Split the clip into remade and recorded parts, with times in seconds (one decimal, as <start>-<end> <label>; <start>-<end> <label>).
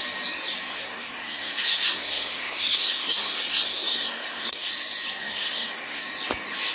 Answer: 0.0-0.7 recorded; 0.7-4.7 remade; 4.7-5.2 recorded; 5.2-6.0 remade; 6.0-6.7 recorded